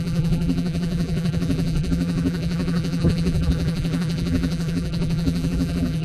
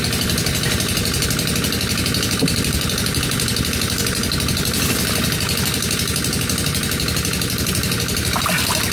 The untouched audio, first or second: second